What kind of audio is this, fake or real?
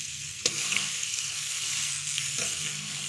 fake